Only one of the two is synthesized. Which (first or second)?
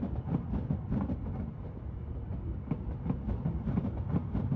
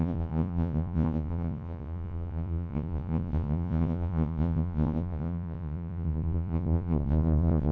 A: second